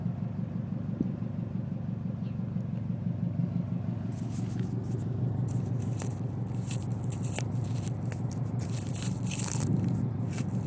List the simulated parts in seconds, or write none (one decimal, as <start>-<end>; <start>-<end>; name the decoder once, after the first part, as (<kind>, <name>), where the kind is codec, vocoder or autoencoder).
8.3-8.9 (vocoder, BigVGAN v2)